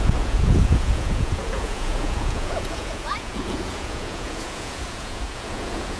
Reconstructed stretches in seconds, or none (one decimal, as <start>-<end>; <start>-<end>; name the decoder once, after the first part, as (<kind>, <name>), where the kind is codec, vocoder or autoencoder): 0.0-6.0 (vocoder, Vocos)

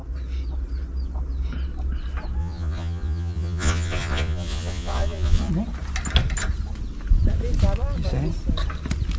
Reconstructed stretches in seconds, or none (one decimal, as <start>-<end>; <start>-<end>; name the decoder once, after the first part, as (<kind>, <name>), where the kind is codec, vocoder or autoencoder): 2.4-5.5 (vocoder, Vocos)

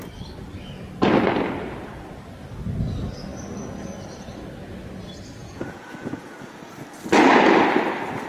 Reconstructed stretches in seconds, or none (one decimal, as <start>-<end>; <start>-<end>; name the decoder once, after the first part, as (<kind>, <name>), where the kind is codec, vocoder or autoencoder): 5.4-6.7 (vocoder, Vocos)

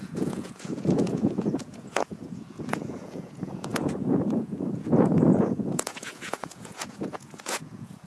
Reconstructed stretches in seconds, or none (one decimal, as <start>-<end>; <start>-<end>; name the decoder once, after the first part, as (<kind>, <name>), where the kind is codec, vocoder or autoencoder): 0.0-8.1 (vocoder, Vocos)